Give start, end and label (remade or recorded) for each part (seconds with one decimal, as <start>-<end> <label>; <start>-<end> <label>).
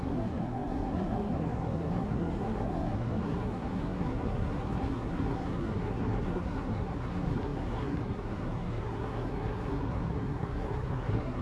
0.0-11.4 remade